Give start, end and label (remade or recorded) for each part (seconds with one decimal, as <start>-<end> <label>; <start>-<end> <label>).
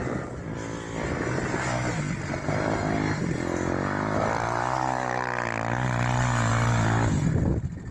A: 0.0-2.0 remade; 2.0-6.5 recorded; 6.5-7.9 remade